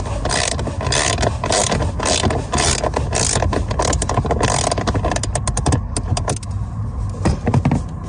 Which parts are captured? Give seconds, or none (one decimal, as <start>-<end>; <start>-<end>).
0.0-8.1